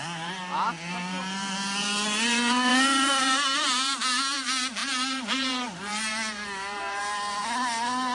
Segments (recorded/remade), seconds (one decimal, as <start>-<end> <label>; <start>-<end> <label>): 0.0-2.7 remade; 2.7-3.2 recorded; 3.2-8.1 remade